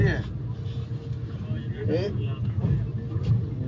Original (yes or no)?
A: yes